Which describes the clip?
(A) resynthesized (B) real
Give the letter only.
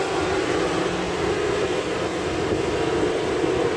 B